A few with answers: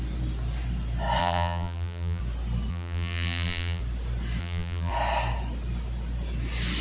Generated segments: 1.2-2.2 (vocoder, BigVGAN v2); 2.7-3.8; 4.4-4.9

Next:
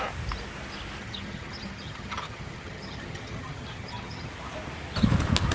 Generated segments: 1.0-4.3 (vocoder, HiFi-GAN)

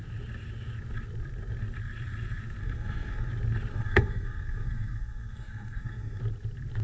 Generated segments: 2.6-3.3 (codec, SNAC); 3.7-6.2

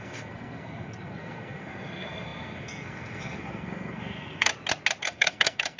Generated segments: 0.0-4.5 (codec, SNAC); 5.0-5.8

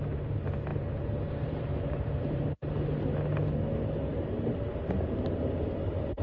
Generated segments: 0.7-2.5 (vocoder, BigVGAN v2); 4.1-5.5

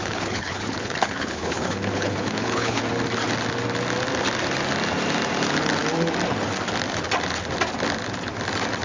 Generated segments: 0.0-2.8 (codec, HILCodec)

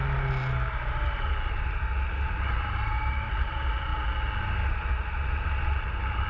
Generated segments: none

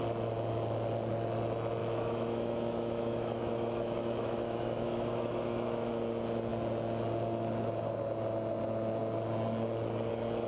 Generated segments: 1.8-5.9 (autoencoder, DAC-VAE)